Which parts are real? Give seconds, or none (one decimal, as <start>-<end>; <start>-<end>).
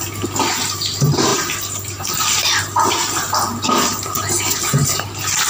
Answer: 0.0-5.5